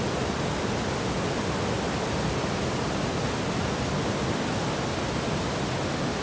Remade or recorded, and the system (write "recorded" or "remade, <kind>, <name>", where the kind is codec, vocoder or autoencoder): recorded